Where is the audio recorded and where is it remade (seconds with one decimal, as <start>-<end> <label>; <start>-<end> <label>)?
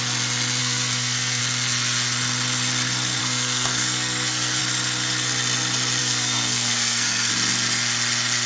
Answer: 0.0-0.6 recorded; 0.6-1.4 remade; 1.4-3.2 recorded; 3.2-4.6 remade; 4.6-6.0 recorded; 6.0-7.3 remade; 7.3-8.5 recorded